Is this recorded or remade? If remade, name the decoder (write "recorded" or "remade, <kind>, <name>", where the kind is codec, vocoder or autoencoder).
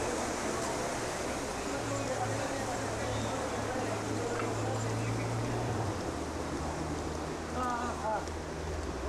recorded